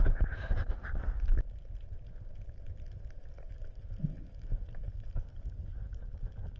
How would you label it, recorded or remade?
recorded